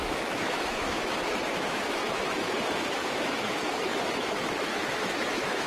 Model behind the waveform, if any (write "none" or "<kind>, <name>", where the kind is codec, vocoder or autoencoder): autoencoder, DAC-VAE